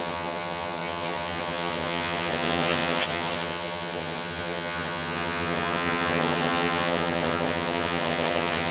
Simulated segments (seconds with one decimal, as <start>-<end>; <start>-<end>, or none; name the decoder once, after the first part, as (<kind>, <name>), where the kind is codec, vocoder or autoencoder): 0.0-8.7 (vocoder, HiFi-GAN)